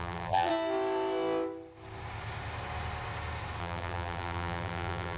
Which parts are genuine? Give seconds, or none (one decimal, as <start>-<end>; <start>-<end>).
0.5-3.6